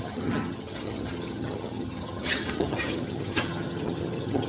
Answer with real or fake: fake